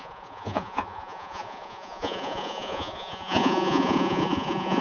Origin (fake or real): fake